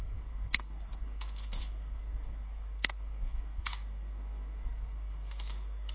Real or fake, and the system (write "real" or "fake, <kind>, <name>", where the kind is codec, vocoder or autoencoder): fake, codec, SNAC